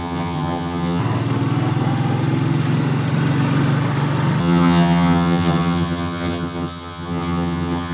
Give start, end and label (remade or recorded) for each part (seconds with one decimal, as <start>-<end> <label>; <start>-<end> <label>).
0.0-1.0 remade; 1.0-4.4 recorded; 4.4-7.9 remade